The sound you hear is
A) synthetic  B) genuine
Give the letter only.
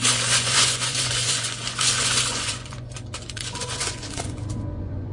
A